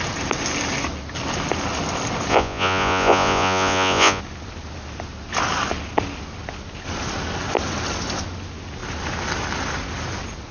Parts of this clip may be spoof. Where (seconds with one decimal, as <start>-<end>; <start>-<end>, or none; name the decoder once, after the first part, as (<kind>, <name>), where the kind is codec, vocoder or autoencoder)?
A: 2.3-4.2 (vocoder, Vocos)